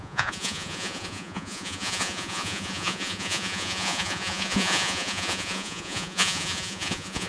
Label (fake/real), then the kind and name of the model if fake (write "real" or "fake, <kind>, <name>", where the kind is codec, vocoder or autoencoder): fake, vocoder, Vocos